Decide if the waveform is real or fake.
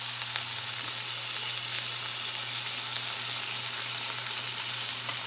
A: real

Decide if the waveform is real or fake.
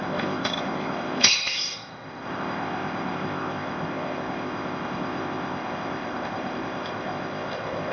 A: fake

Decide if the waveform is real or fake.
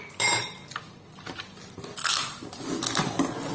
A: real